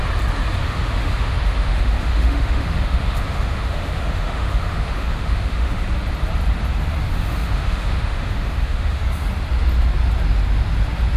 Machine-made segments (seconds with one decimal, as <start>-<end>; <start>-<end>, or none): 0.6-5.8; 7.1-9.0